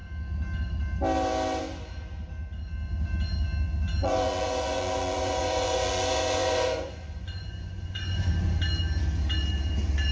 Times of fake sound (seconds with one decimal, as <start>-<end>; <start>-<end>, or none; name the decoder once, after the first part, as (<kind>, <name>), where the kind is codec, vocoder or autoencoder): 4.0-8.3 (vocoder, Vocos)